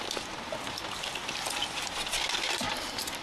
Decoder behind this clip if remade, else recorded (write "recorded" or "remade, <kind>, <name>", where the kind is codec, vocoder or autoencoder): remade, vocoder, BigVGAN v2